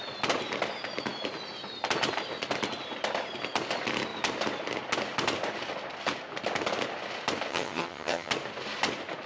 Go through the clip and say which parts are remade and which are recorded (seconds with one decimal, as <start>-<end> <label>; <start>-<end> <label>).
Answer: 0.0-7.5 recorded; 7.5-8.3 remade; 8.3-9.3 recorded